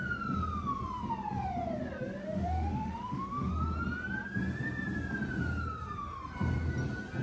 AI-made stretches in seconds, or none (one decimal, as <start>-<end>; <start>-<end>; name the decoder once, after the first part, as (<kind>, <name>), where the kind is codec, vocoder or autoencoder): 2.2-3.5 (autoencoder, DAC-VAE)